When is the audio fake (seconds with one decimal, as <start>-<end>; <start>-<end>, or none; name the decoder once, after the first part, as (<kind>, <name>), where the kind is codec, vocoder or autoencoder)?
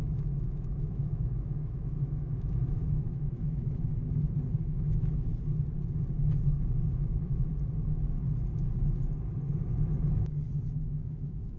0.0-3.9 (autoencoder, DAC-VAE); 4.6-5.3; 6.9-7.5; 10.7-11.6